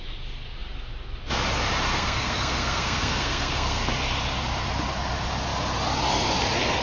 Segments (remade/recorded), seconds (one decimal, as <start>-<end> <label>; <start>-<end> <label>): 0.0-1.9 recorded; 1.9-3.8 remade; 3.8-6.8 recorded